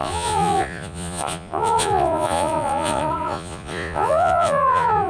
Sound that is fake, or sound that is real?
fake